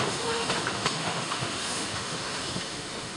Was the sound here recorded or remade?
remade